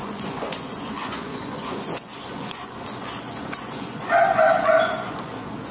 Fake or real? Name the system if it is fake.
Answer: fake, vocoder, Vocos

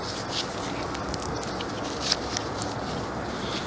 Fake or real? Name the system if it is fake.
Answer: real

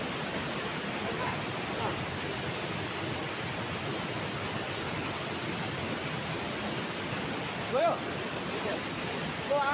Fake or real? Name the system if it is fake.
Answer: real